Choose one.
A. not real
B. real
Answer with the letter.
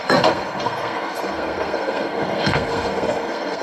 A